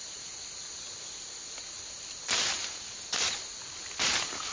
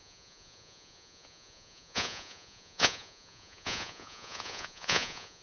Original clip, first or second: first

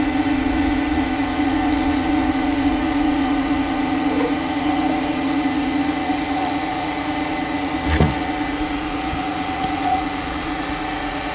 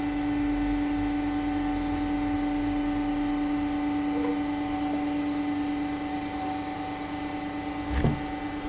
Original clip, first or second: second